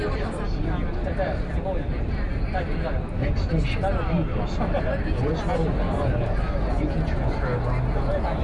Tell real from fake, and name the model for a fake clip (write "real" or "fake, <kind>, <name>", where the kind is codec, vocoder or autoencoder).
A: real